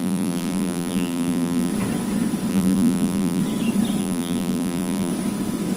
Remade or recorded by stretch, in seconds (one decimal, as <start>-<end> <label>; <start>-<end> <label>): 0.0-1.7 remade; 1.7-2.5 recorded; 2.5-3.4 remade; 3.4-4.0 recorded; 4.0-5.1 remade; 5.1-5.8 recorded